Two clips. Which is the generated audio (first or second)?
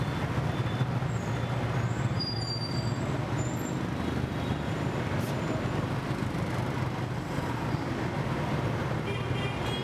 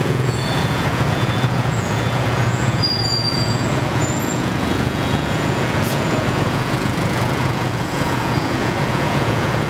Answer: second